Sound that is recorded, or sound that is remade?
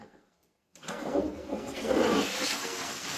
remade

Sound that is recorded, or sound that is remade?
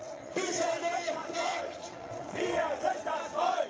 remade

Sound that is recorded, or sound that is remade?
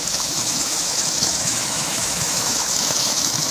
remade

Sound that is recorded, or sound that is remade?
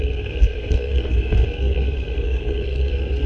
remade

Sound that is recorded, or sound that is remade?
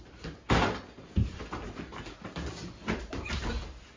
recorded